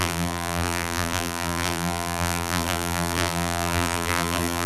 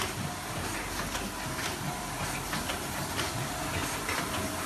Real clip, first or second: second